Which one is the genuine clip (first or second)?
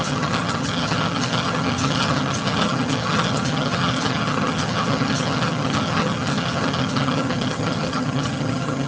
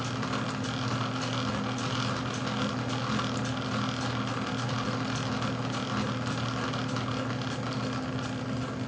second